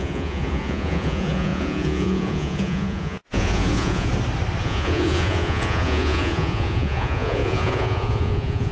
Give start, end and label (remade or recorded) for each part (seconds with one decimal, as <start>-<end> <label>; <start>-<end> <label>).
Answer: 0.0-4.1 remade; 4.1-4.6 recorded; 4.6-8.7 remade